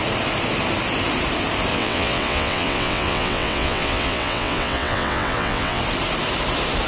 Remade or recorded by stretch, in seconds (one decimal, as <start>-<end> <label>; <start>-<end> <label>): 0.0-1.7 recorded; 1.7-5.8 remade; 5.8-6.9 recorded